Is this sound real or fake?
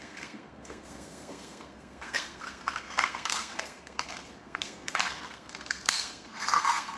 fake